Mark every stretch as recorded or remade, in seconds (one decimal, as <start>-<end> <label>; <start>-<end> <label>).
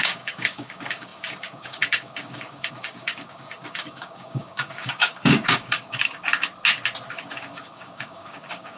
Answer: 0.0-6.3 remade; 6.3-7.1 recorded; 7.1-8.8 remade